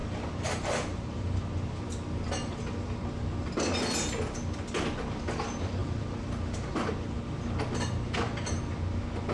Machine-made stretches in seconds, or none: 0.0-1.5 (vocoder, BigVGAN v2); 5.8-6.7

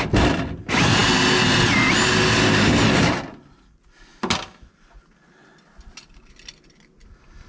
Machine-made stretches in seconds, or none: none

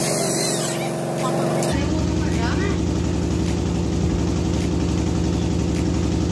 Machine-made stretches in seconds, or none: none

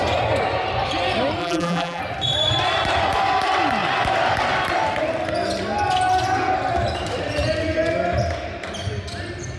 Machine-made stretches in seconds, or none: 1.4-2.0 (vocoder, BigVGAN v2)

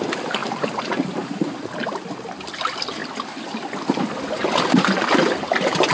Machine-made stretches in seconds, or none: 0.4-1.5 (vocoder, BigVGAN v2)